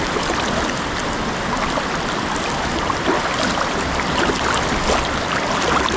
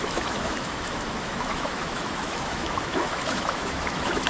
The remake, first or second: second